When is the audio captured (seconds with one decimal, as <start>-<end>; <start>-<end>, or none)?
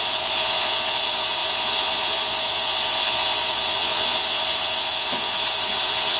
none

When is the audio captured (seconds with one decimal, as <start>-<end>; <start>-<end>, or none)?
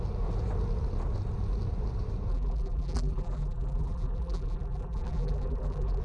0.0-2.3